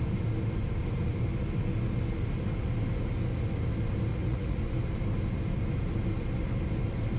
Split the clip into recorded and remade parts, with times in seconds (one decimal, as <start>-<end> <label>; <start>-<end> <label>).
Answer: 0.0-4.1 recorded; 4.1-4.6 remade; 4.6-7.2 recorded